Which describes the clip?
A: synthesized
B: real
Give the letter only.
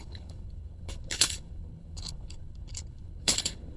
A